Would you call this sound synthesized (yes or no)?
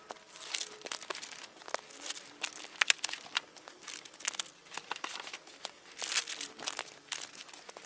no